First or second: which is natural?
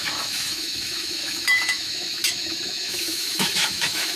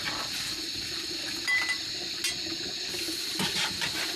second